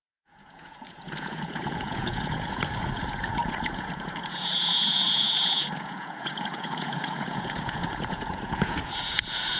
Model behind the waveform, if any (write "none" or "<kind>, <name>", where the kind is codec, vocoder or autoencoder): vocoder, Vocos